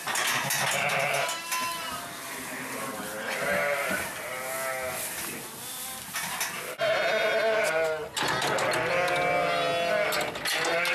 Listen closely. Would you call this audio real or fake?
real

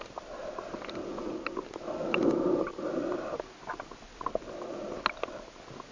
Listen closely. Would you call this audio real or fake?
real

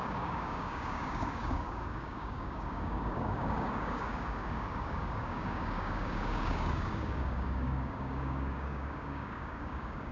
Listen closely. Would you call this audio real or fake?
fake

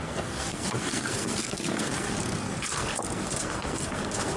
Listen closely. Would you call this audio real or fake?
fake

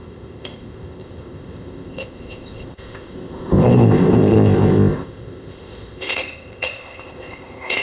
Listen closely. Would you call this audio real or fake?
fake